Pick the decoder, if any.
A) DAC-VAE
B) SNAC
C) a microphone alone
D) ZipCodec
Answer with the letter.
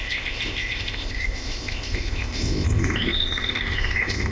D